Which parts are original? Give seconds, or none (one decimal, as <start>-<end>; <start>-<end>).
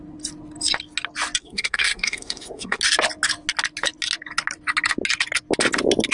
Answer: 0.0-1.4; 2.8-6.1